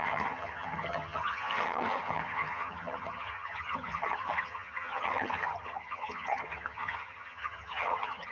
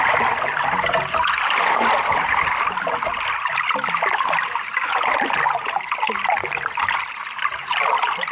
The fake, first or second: first